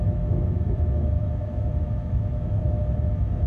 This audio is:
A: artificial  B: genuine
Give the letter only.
A